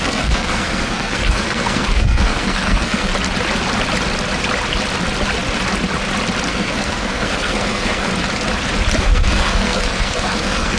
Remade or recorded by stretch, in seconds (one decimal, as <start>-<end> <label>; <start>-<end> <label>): 0.0-3.1 remade; 3.1-6.5 recorded; 6.5-8.1 remade; 8.1-9.0 recorded; 9.0-10.8 remade